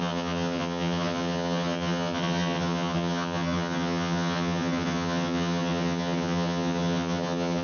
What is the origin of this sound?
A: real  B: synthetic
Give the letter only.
B